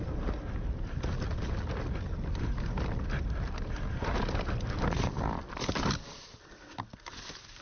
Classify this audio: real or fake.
real